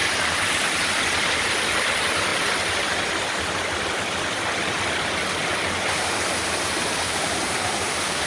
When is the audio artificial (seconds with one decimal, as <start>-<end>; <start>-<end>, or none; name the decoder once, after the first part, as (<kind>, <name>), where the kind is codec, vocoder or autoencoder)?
0.0-1.0 (vocoder, BigVGAN v2); 5.4-8.3